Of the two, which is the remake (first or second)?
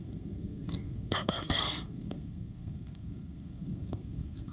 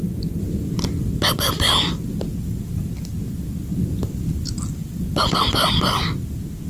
first